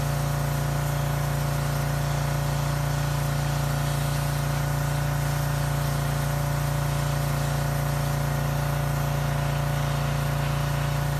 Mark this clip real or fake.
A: real